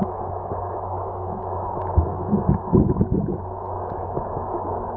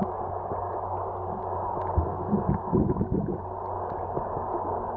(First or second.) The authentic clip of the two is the second